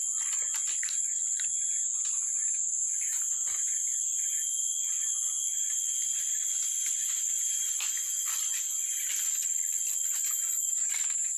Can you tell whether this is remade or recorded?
recorded